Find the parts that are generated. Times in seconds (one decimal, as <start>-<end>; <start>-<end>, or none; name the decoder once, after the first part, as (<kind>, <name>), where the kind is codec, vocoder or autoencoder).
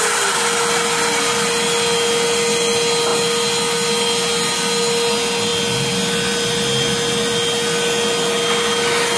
none